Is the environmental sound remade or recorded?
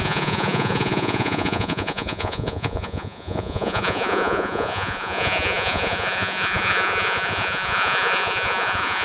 remade